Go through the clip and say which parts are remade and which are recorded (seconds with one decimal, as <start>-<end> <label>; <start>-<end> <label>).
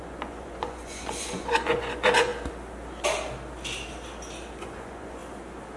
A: 0.0-2.3 remade; 2.3-4.6 recorded; 4.6-5.2 remade; 5.2-5.8 recorded